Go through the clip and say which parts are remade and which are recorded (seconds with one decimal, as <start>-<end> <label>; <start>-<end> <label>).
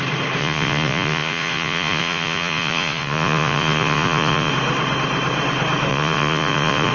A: 0.0-0.4 recorded; 0.4-4.5 remade; 4.5-5.9 recorded; 5.9-6.9 remade